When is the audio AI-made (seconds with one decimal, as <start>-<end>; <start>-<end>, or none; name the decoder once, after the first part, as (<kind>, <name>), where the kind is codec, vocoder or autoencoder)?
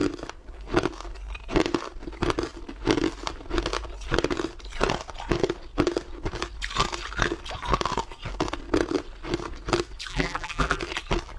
10.1-10.8 (vocoder, BigVGAN v2)